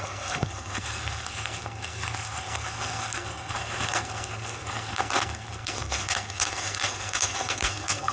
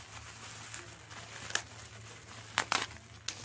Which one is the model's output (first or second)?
first